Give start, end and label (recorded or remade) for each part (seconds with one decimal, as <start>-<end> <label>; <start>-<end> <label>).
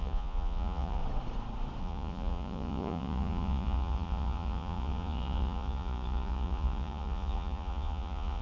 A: 0.0-1.0 remade; 1.0-1.8 recorded; 1.8-8.4 remade